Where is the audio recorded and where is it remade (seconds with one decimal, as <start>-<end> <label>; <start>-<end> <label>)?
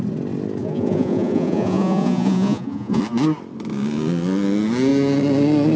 0.0-0.6 recorded; 0.6-3.0 remade; 3.0-5.8 recorded